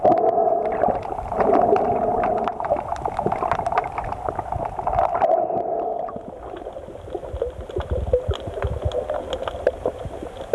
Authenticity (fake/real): real